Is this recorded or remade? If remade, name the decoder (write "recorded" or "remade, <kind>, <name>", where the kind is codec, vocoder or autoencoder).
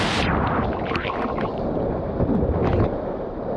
recorded